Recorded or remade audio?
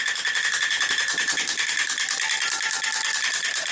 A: recorded